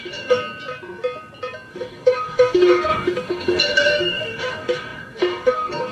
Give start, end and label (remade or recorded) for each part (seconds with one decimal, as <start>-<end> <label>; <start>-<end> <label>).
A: 0.0-0.4 remade; 0.4-1.7 recorded; 1.7-5.9 remade